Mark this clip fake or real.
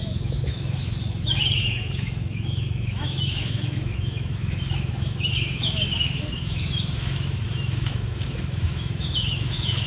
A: fake